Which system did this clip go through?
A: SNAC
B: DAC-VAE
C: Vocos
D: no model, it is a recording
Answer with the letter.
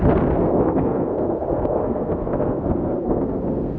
A